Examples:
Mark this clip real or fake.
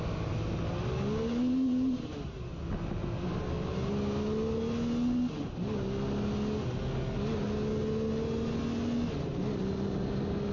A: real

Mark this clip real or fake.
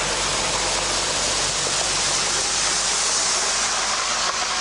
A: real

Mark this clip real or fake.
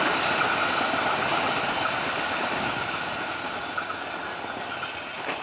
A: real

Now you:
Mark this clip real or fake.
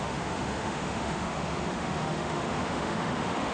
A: fake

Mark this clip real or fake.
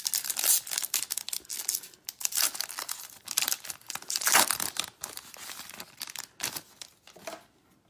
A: real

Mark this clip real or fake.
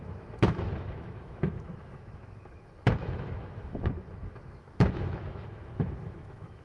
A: fake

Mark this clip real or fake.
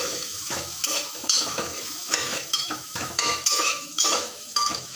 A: fake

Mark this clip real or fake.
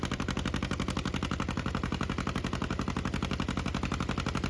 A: real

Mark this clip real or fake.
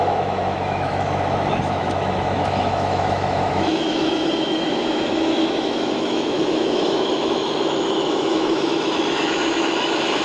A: fake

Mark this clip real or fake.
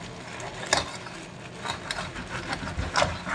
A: real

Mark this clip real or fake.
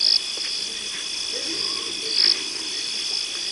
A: real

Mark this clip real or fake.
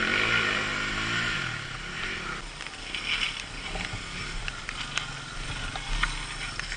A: real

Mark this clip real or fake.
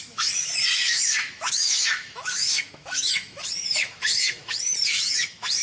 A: fake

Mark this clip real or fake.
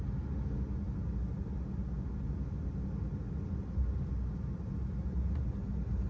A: real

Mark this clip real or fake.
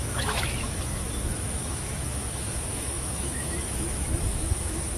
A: fake